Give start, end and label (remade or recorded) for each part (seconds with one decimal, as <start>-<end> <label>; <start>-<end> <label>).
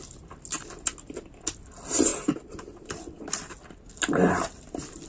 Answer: 0.0-5.1 recorded